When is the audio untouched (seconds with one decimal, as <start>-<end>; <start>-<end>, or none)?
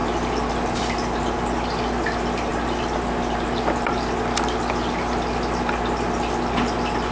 0.0-7.1